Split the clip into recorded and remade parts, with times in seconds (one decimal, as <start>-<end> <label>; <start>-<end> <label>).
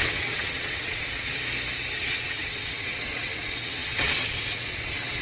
0.0-1.3 remade; 1.3-1.9 recorded; 1.9-5.2 remade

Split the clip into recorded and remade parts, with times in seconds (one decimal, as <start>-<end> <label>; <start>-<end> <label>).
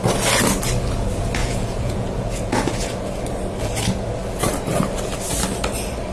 0.0-1.4 recorded; 1.4-3.2 remade; 3.2-6.1 recorded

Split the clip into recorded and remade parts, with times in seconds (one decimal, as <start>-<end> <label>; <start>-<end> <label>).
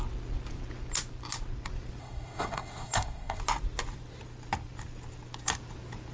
0.0-2.0 recorded; 2.0-3.4 remade; 3.4-6.1 recorded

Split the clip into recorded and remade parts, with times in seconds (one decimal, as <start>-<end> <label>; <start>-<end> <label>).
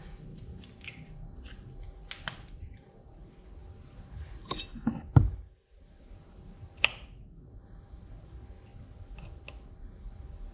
0.0-10.5 recorded